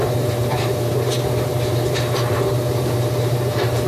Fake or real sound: fake